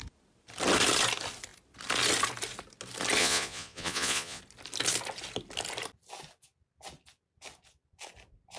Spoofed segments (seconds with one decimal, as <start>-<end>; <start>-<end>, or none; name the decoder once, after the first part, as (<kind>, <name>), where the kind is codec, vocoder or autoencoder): 3.2-4.4 (vocoder, Vocos)